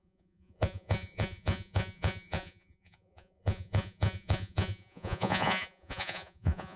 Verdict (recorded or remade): remade